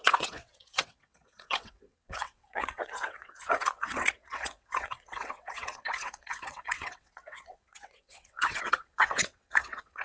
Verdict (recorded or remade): remade